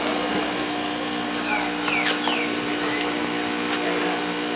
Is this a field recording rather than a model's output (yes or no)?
yes